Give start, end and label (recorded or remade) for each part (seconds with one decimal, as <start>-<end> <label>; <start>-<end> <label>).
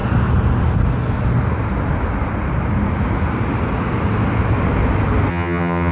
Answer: 0.0-5.3 recorded; 5.3-5.9 remade